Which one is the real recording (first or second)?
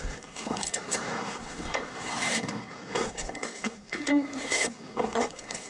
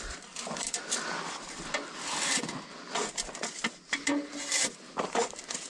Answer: second